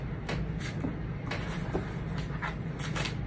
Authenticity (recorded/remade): recorded